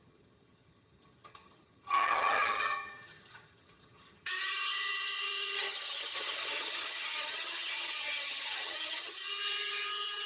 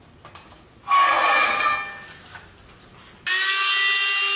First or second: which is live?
second